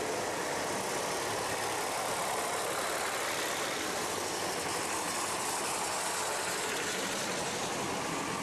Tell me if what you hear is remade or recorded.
recorded